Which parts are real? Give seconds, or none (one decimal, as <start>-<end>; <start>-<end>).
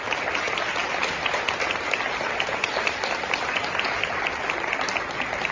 0.0-5.5